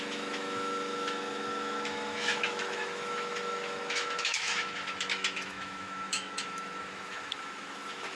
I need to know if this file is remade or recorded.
remade